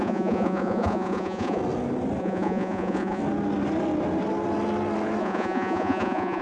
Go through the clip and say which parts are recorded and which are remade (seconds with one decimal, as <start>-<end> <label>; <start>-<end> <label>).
0.0-1.6 remade; 1.6-2.2 recorded; 2.2-3.2 remade; 3.2-5.2 recorded; 5.2-6.4 remade